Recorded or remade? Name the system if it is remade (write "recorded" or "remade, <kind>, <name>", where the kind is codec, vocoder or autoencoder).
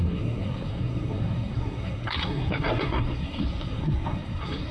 remade, codec, SNAC